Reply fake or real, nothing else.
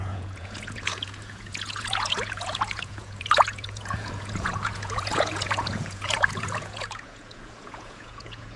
fake